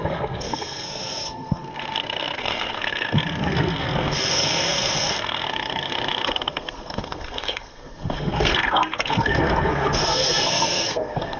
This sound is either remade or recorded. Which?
remade